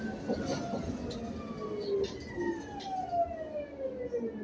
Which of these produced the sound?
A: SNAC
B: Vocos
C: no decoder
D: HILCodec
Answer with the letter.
C